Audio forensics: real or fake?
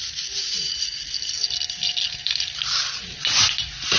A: real